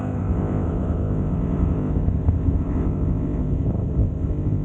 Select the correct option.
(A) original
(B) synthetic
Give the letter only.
B